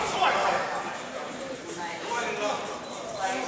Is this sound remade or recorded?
remade